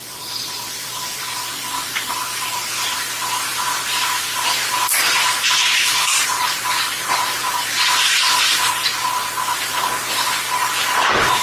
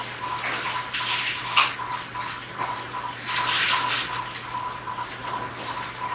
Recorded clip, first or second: second